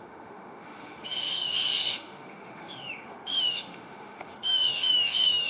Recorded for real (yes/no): no